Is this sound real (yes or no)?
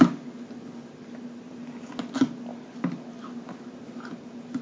yes